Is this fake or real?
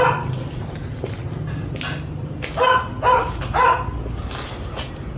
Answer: real